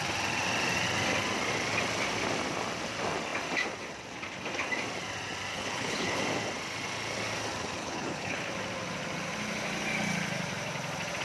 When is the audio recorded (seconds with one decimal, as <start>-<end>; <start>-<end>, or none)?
0.0-5.5; 6.2-7.8; 8.5-11.2